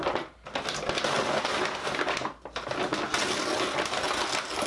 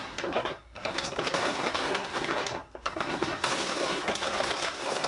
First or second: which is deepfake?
second